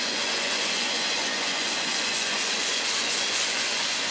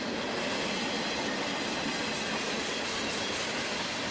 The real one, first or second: second